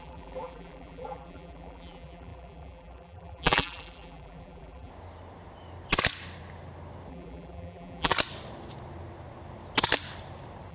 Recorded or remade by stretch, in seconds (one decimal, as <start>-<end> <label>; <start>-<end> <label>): 0.0-4.9 remade; 4.9-7.1 recorded; 7.1-8.1 remade; 8.1-10.7 recorded